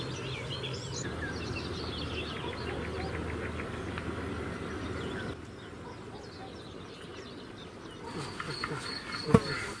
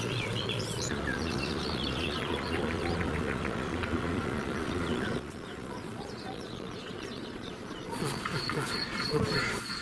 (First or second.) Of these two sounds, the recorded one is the first